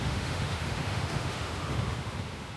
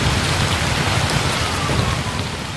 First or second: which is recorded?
second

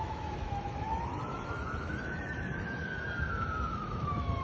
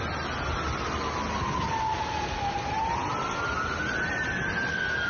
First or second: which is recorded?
second